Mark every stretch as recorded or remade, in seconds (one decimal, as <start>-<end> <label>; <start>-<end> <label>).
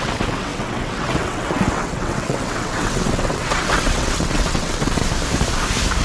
0.0-5.0 remade; 5.0-6.0 recorded